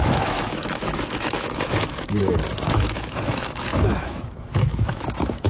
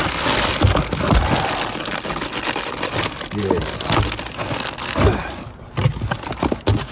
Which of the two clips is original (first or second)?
second